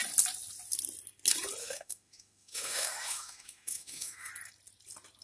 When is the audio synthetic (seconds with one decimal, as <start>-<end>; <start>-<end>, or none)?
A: 1.6-4.3